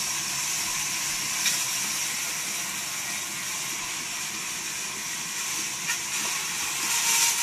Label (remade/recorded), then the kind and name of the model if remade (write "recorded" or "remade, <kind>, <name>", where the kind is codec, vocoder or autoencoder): recorded